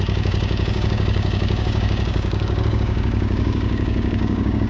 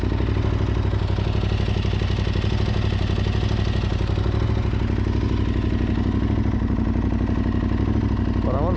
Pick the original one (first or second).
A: second